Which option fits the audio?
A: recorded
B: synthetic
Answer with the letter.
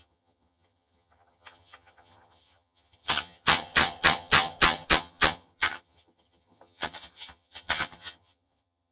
B